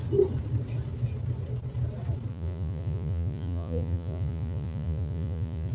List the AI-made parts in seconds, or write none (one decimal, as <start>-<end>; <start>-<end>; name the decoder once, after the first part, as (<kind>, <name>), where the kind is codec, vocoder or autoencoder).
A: 2.3-5.7 (vocoder, Vocos)